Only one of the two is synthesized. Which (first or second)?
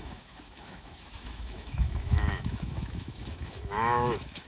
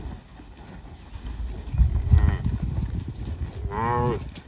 first